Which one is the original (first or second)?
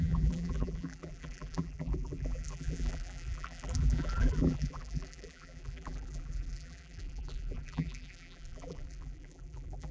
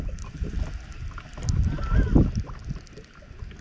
second